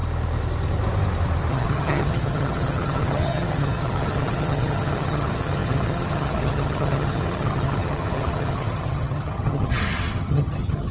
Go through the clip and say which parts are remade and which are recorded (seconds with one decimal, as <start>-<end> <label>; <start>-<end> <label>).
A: 0.0-1.5 recorded; 1.5-10.9 remade

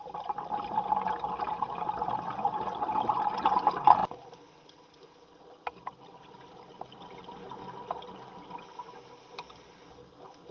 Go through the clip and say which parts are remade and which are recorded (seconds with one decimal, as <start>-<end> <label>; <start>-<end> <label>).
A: 0.0-10.5 recorded

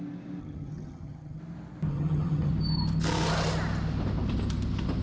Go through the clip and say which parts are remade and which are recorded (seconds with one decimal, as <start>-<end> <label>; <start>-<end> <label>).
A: 0.0-0.4 recorded; 0.4-1.4 remade; 1.4-1.9 recorded; 1.9-2.5 remade; 2.5-5.0 recorded

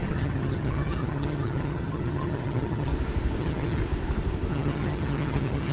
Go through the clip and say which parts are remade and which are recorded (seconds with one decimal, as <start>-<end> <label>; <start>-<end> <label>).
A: 0.0-2.9 remade; 2.9-3.4 recorded; 3.4-3.8 remade; 3.8-4.5 recorded; 4.5-5.7 remade

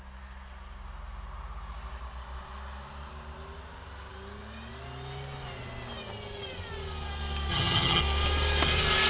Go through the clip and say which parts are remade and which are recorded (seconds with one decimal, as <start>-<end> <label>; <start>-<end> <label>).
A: 0.0-7.5 recorded; 7.5-8.0 remade; 8.0-9.1 recorded

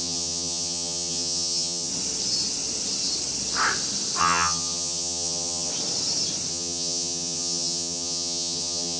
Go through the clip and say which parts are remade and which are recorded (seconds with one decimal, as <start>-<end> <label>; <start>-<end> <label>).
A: 0.0-1.9 remade; 1.9-4.2 recorded; 4.2-5.7 remade; 5.7-6.5 recorded; 6.5-9.0 remade

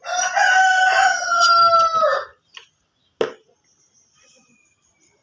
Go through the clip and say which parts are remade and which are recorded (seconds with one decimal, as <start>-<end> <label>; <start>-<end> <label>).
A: 0.0-1.0 recorded; 1.0-1.5 remade; 1.5-5.2 recorded

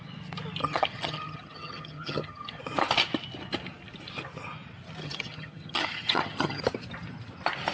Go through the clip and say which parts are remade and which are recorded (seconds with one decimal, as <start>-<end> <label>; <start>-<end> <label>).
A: 0.0-0.6 recorded; 0.6-2.6 remade; 2.6-5.0 recorded; 5.0-6.6 remade; 6.6-7.7 recorded